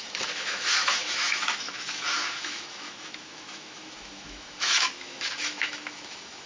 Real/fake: fake